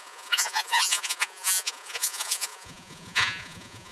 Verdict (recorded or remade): remade